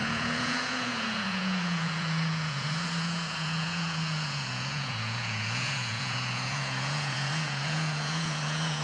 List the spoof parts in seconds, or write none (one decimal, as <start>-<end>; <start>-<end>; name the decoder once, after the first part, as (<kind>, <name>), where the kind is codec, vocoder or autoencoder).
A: 0.0-8.8 (vocoder, Vocos)